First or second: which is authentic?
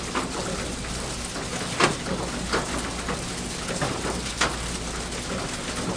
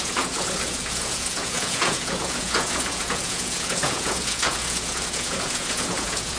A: first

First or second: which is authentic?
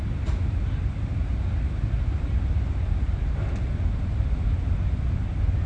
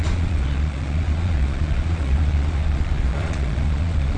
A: first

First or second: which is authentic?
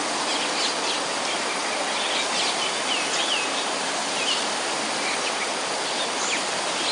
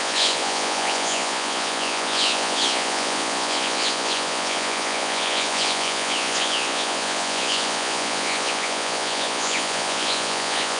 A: first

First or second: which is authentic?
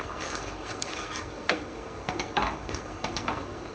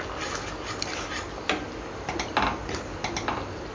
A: second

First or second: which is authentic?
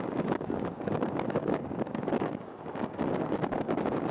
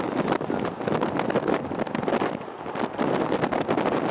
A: second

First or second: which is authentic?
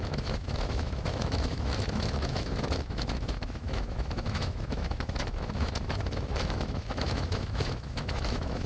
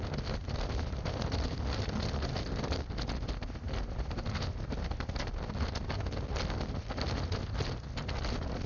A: second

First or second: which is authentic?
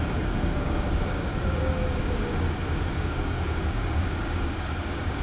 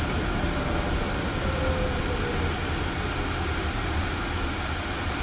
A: second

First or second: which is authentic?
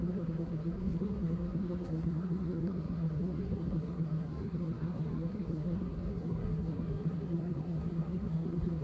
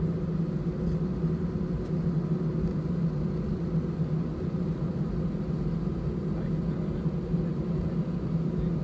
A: second